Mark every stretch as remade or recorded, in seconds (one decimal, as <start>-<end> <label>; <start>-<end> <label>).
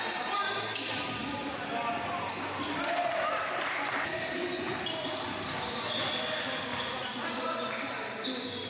0.0-8.7 recorded